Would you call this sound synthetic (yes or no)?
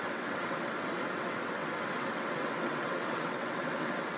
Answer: yes